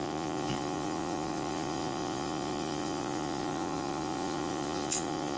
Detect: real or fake fake